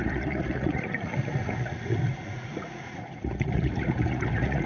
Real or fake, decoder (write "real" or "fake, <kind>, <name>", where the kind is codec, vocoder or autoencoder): fake, vocoder, Vocos